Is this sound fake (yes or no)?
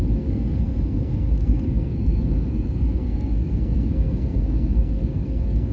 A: yes